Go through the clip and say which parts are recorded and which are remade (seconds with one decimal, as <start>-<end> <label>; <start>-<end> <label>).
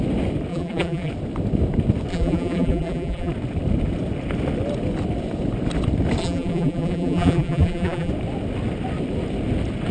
0.0-0.5 recorded; 0.5-1.1 remade; 1.1-2.1 recorded; 2.1-3.3 remade; 3.3-6.2 recorded; 6.2-8.1 remade; 8.1-9.9 recorded